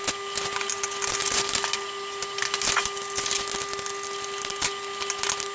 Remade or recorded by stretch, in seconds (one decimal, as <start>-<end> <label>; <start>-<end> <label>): 0.0-5.5 recorded